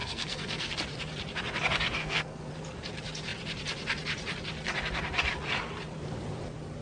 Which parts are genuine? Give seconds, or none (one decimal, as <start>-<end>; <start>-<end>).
0.7-2.0; 2.5-6.8